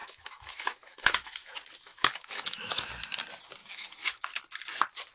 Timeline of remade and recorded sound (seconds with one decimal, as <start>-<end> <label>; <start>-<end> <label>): 0.0-1.5 remade; 1.5-1.9 recorded; 1.9-2.9 remade; 2.9-3.6 recorded; 3.6-4.4 remade; 4.4-5.1 recorded